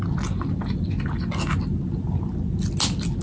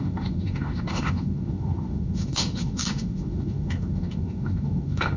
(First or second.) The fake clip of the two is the second